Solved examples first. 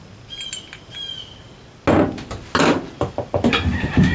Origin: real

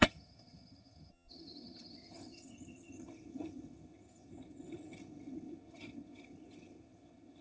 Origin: fake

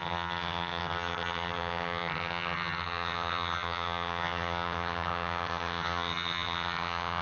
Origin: fake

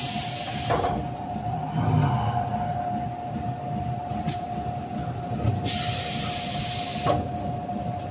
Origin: real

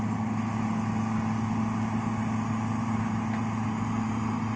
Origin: real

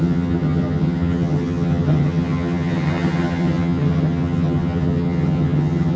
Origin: fake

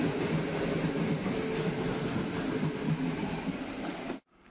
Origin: real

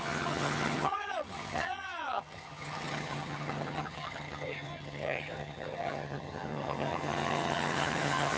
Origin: fake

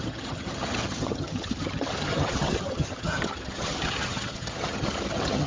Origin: fake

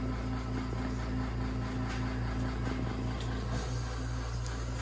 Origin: real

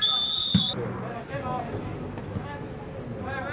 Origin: real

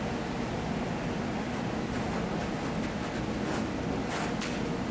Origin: real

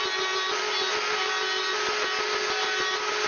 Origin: real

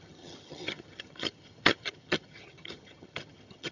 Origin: fake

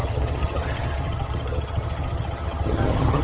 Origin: fake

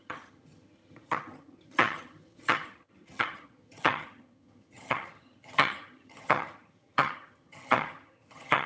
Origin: fake